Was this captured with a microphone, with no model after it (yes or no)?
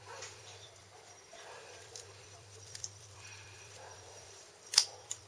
no